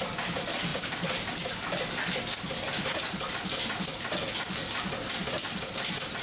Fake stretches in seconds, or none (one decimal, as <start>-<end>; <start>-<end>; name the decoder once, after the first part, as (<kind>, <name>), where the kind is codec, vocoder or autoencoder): none